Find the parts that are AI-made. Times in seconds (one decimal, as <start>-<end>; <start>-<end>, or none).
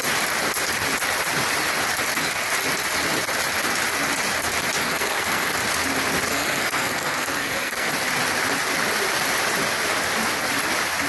4.8-5.5; 6.3-7.9